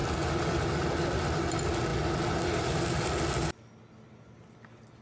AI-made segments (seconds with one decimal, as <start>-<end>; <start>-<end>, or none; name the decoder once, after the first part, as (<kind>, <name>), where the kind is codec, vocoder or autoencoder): none